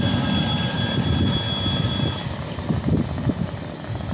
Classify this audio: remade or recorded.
recorded